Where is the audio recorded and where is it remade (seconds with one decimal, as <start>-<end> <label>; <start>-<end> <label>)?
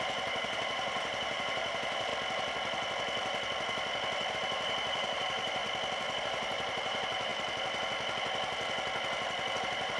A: 0.0-2.1 remade; 2.1-4.3 recorded; 4.3-5.6 remade; 5.6-6.2 recorded; 6.2-7.3 remade; 7.3-9.6 recorded; 9.6-10.0 remade